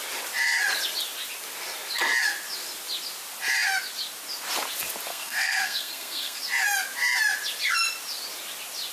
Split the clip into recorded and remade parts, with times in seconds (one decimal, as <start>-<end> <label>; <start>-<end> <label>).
0.0-5.1 recorded; 5.1-6.4 remade; 6.4-8.9 recorded